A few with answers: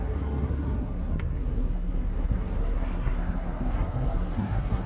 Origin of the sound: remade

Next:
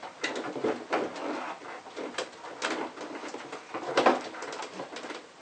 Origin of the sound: recorded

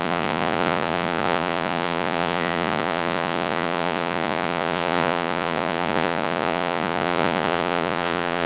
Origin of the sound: remade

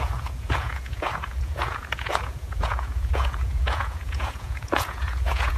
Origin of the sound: remade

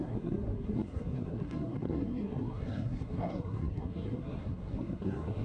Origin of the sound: remade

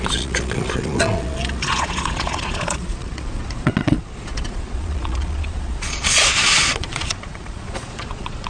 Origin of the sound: remade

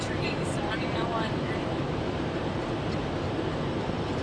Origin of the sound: remade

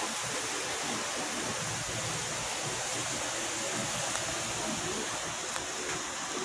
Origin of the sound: recorded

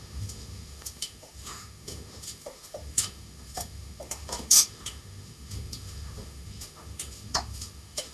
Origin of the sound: remade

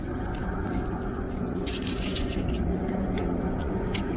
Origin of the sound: remade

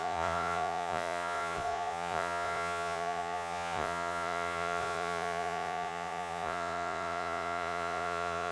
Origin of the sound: remade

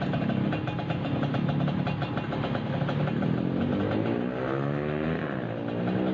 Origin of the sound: recorded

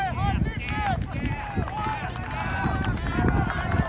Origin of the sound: recorded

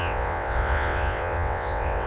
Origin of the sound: remade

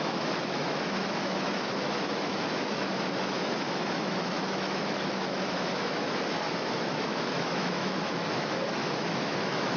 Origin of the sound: remade